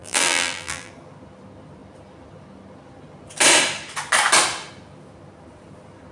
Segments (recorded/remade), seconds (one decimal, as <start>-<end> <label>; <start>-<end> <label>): 0.0-0.9 remade; 0.9-6.1 recorded